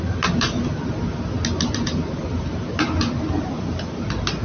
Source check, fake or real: real